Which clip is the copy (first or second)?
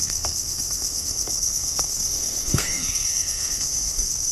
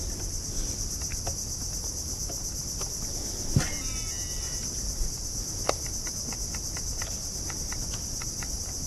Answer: first